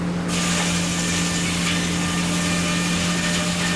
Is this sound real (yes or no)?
yes